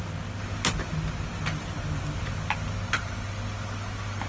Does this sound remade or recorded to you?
recorded